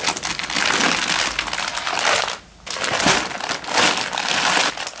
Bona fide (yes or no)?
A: yes